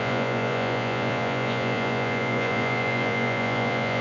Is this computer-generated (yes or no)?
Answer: yes